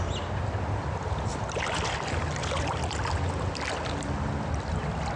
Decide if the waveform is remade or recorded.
recorded